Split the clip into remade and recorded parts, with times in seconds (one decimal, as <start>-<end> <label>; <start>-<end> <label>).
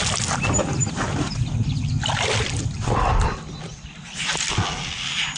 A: 0.0-5.4 recorded